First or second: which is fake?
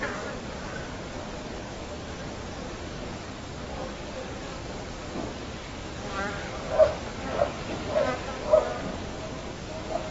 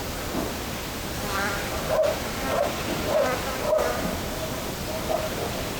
first